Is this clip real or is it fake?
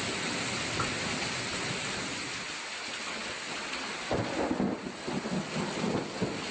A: real